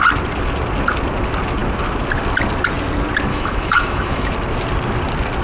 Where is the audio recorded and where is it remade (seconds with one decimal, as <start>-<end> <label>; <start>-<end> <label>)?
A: 0.0-3.3 recorded; 3.3-4.3 remade; 4.3-5.4 recorded